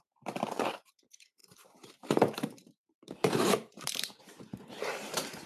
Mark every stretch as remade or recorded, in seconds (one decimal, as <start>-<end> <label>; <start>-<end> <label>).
0.0-5.5 remade